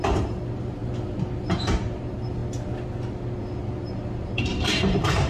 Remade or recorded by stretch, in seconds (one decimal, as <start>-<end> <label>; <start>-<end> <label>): 0.0-0.8 remade; 0.8-1.4 recorded; 1.4-2.4 remade; 2.4-3.4 recorded; 3.4-5.3 remade